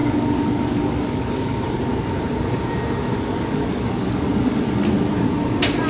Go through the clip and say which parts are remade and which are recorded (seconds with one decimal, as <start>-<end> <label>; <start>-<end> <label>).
0.0-1.8 remade; 1.8-3.0 recorded; 3.0-5.1 remade; 5.1-5.9 recorded